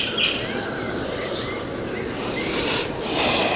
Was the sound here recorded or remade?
recorded